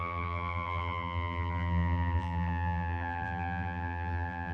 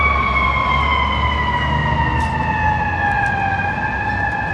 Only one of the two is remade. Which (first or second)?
first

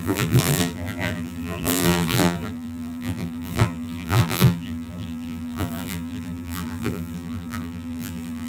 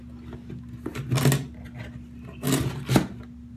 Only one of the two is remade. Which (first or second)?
first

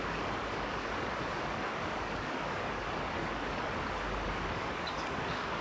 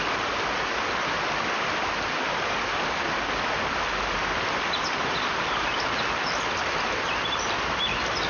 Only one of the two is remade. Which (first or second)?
first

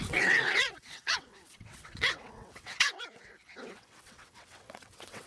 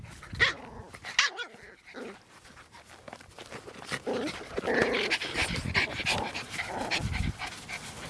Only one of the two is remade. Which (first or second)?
first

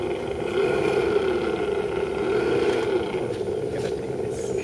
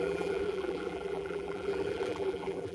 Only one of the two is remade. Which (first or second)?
second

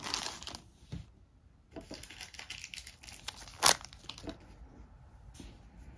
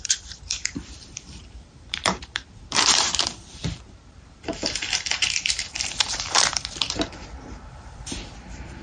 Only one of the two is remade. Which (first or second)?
second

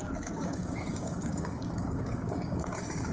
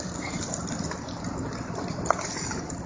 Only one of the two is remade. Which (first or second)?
first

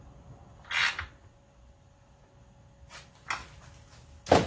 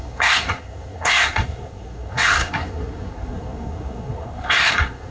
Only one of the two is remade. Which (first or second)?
second